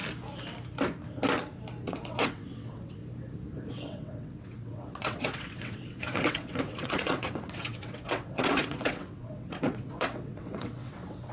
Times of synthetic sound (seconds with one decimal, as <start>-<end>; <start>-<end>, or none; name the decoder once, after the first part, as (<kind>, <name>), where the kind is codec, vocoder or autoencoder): 1.9-3.0 (vocoder, WaveNeXt); 3.7-11.3